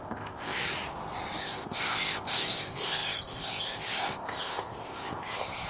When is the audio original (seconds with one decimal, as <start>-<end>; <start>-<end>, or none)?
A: 0.6-1.4